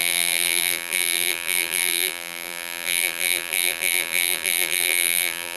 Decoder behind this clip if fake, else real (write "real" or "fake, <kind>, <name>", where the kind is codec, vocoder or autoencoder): fake, vocoder, BigVGAN v2